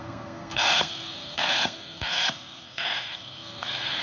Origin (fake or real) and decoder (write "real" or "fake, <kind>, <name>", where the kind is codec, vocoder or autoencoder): fake, codec, SNAC